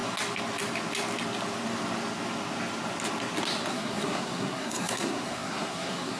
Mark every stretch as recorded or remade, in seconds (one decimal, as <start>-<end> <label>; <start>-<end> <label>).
0.0-3.7 recorded; 3.7-6.2 remade